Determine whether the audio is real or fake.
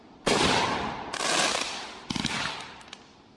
real